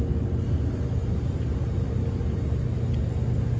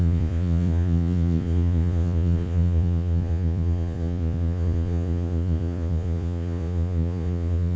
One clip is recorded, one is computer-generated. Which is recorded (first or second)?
first